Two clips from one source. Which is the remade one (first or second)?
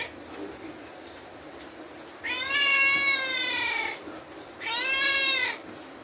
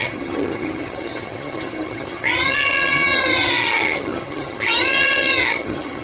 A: second